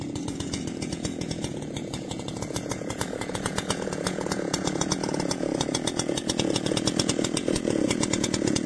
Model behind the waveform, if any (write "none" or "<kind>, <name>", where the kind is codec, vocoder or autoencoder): vocoder, Vocos